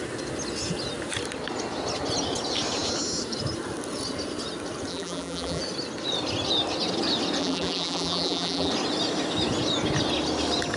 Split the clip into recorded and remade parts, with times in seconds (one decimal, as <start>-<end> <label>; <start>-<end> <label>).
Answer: 0.0-4.9 recorded; 4.9-5.6 remade; 5.6-7.4 recorded; 7.4-8.7 remade; 8.7-10.8 recorded